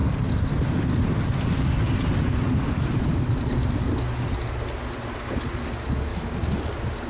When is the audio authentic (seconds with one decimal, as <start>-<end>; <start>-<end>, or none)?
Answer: 0.0-6.1